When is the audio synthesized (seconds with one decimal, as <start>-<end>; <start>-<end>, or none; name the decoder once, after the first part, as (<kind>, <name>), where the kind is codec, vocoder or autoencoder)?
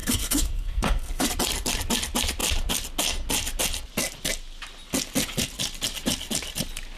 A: 0.0-1.3 (codec, SNAC)